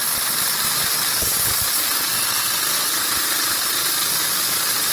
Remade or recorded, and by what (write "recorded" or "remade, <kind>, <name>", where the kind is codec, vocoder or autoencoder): recorded